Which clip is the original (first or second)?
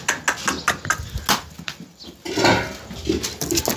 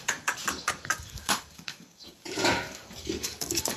first